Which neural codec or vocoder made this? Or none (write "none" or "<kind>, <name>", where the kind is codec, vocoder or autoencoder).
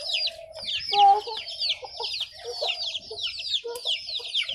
none